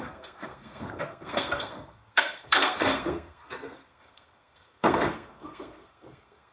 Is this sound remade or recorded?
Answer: remade